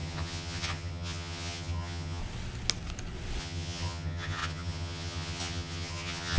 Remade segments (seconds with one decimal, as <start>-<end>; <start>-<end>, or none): 0.0-2.2; 3.4-6.4

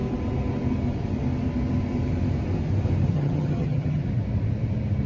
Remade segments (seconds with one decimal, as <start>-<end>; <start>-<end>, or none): 3.1-4.1

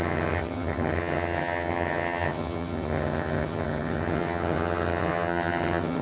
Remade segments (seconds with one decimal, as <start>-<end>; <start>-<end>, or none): 0.0-6.0

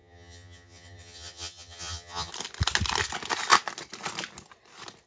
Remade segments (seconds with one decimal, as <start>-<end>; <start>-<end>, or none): 0.0-2.3